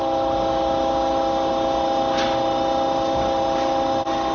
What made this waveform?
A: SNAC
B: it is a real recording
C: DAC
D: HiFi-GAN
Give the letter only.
B